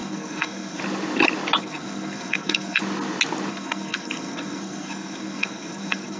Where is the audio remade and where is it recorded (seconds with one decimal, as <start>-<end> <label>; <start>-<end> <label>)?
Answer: 0.0-0.8 remade; 0.8-1.6 recorded; 1.6-2.8 remade; 2.8-3.5 recorded; 3.5-6.2 remade